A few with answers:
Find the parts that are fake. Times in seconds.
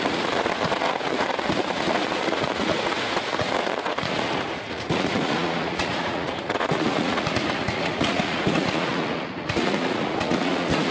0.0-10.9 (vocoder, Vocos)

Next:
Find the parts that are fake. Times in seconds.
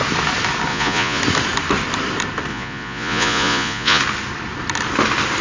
0.7-1.2 (vocoder, Vocos); 2.5-4.0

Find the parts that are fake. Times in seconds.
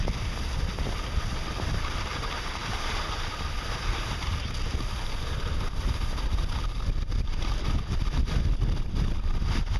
none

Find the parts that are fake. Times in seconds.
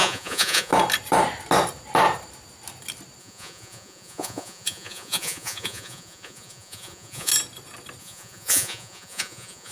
0.0-0.7 (vocoder, Vocos); 3.2-7.3; 8.0-9.7